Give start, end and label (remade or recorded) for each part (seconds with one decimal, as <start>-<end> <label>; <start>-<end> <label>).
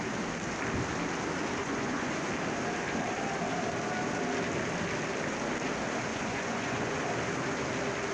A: 0.0-1.6 recorded; 1.6-2.3 remade; 2.3-6.1 recorded; 6.1-7.0 remade; 7.0-8.1 recorded